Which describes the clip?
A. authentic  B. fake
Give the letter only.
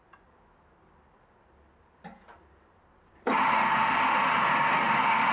A